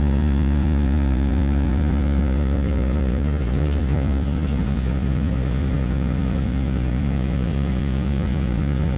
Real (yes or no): no